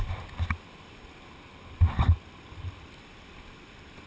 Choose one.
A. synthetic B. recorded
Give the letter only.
B